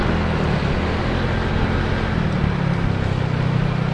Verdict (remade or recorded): recorded